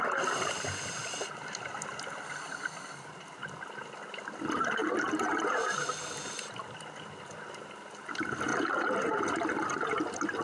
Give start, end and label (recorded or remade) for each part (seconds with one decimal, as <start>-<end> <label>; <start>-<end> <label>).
0.0-4.8 recorded; 4.8-5.5 remade; 5.5-8.5 recorded; 8.5-9.3 remade; 9.3-10.4 recorded